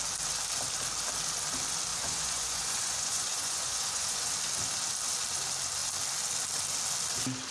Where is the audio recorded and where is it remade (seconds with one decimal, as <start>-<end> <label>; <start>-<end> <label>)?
0.0-1.9 recorded; 1.9-4.3 remade; 4.3-7.5 recorded